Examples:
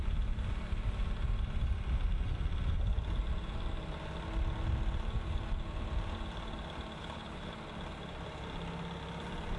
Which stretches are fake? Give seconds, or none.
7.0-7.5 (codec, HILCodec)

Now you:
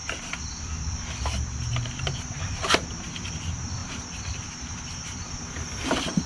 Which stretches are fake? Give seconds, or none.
1.7-3.0 (vocoder, BigVGAN v2); 3.8-5.3